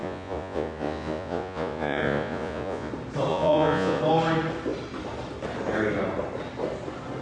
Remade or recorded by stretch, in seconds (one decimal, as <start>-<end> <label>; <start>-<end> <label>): 0.0-2.9 remade; 2.9-3.3 recorded; 3.3-4.0 remade; 4.0-7.2 recorded